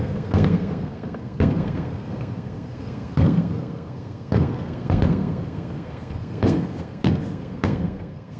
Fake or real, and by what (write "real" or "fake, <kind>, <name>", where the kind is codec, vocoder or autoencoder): fake, codec, SNAC